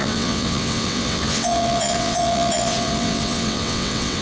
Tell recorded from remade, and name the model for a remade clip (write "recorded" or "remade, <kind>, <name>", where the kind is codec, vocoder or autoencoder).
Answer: remade, vocoder, WaveNeXt